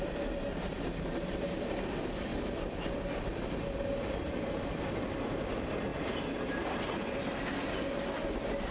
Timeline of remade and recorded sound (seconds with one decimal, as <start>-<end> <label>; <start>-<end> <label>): 0.0-5.9 remade; 5.9-7.5 recorded; 7.5-8.7 remade